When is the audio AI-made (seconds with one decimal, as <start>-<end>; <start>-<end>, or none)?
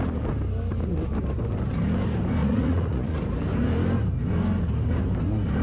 2.4-3.2